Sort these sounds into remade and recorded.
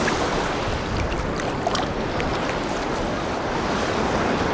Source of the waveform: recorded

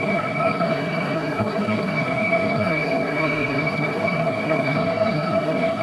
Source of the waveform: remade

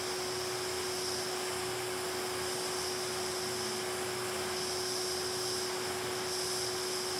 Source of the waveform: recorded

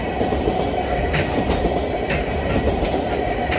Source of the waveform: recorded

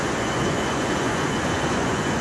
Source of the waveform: remade